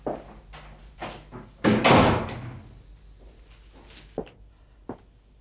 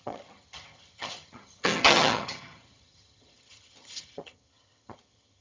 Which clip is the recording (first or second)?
first